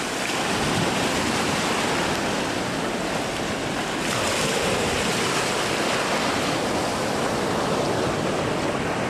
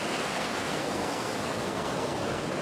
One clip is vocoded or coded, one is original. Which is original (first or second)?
first